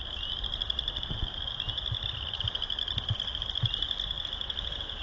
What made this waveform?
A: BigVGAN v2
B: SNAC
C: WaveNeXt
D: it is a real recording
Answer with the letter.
D